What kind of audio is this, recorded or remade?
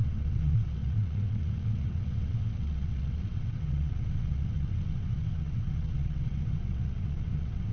remade